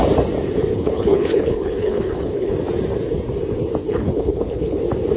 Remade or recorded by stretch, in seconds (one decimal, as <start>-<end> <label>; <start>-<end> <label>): 0.0-0.7 recorded; 0.7-2.5 remade; 2.5-3.8 recorded; 3.8-4.8 remade; 4.8-5.2 recorded